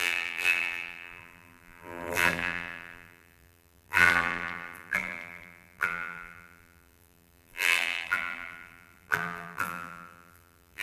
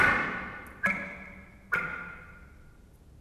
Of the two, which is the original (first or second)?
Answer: second